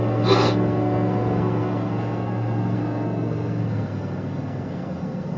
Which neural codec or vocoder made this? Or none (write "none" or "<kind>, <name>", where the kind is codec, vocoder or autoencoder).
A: codec, SNAC